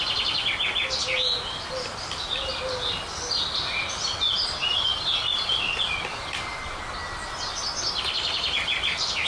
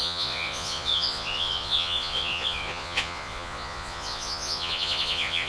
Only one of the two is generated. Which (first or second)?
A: second